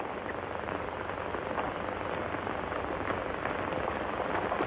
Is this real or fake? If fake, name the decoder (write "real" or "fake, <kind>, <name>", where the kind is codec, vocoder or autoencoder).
real